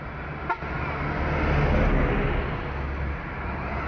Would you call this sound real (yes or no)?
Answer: yes